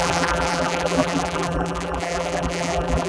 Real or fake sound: fake